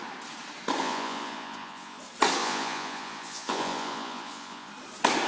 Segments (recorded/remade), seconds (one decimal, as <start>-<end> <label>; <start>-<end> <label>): 0.0-0.8 recorded; 0.8-2.0 remade; 2.0-2.4 recorded; 2.4-4.7 remade; 4.7-5.3 recorded